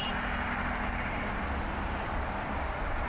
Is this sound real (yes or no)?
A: yes